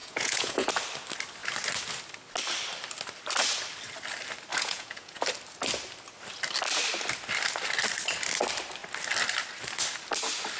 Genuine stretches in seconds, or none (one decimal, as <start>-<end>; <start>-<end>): 0.7-4.5; 5.2-10.6